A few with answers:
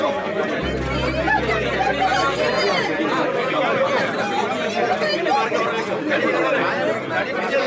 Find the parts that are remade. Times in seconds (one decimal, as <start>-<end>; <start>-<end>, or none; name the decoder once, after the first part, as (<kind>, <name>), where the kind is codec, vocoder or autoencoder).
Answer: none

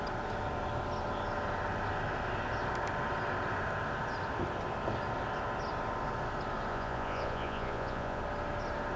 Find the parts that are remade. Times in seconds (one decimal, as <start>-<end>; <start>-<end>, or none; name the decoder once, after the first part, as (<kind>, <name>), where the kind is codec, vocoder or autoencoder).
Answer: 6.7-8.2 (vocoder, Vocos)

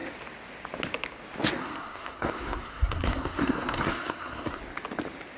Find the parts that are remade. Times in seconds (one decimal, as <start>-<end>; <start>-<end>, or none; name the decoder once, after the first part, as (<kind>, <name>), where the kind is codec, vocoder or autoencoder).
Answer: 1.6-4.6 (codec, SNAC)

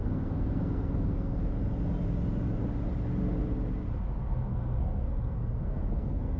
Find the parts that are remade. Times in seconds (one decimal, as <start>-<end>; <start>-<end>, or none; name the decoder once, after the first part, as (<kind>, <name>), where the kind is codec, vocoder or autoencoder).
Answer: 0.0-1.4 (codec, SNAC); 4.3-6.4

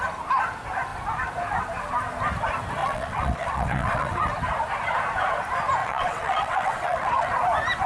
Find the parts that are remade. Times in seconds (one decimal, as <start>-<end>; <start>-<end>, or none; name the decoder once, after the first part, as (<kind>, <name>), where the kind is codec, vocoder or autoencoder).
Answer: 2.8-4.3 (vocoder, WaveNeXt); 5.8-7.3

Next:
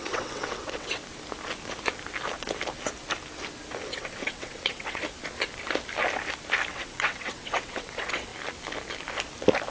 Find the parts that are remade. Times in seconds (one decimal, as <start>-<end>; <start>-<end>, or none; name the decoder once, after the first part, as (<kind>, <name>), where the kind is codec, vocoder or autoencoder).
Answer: 0.0-1.0 (vocoder, WaveNeXt); 3.9-5.0; 6.7-8.3